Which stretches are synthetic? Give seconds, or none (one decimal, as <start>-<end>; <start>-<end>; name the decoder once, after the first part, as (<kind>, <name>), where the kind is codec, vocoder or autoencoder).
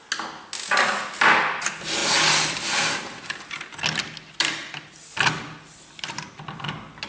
none